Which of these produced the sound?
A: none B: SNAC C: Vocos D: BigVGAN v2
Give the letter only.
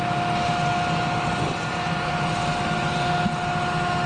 A